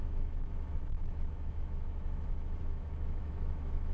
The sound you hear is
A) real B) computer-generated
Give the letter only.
B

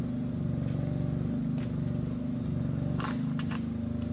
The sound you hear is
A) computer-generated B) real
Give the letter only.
B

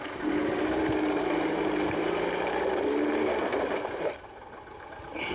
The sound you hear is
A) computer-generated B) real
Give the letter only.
B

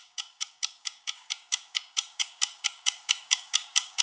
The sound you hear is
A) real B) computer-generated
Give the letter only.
B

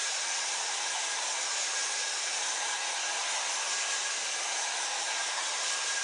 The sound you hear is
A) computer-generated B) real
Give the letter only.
B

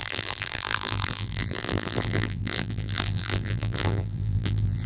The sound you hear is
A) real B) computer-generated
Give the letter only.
B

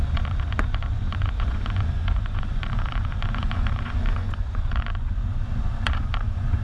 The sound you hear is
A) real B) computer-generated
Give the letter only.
B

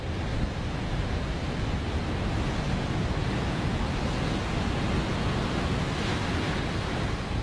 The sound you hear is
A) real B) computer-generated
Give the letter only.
A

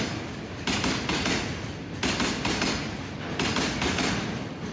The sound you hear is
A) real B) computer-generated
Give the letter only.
A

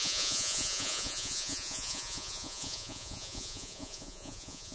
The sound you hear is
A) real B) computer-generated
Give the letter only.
B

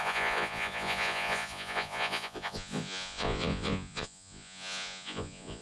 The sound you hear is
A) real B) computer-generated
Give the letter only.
B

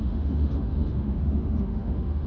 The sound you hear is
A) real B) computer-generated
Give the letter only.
B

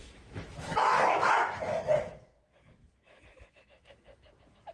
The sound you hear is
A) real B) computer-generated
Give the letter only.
B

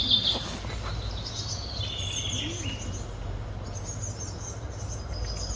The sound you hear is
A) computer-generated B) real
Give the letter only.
B